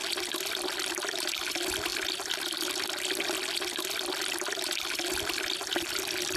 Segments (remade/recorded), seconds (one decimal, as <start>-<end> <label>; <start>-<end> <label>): 0.0-6.4 recorded